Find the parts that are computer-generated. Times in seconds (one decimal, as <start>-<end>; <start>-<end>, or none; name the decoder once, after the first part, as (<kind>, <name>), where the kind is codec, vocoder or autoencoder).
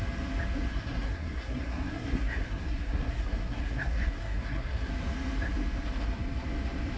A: 0.7-4.9 (codec, SNAC)